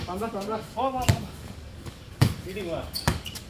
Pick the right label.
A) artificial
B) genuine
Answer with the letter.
A